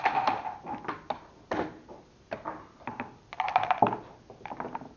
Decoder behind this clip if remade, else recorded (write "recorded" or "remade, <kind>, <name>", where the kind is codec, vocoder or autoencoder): recorded